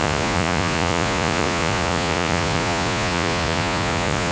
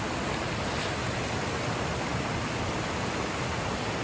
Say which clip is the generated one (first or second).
first